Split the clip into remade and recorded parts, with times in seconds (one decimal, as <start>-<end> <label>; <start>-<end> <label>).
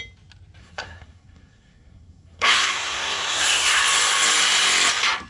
0.0-0.6 recorded; 0.6-3.8 remade; 3.8-5.3 recorded